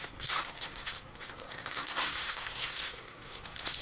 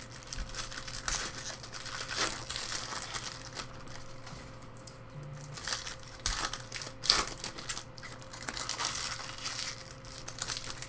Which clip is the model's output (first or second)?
first